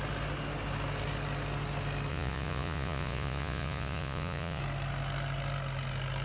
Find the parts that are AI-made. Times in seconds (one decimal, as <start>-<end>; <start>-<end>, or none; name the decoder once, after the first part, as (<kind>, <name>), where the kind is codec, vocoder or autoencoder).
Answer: 2.1-4.6 (vocoder, Vocos)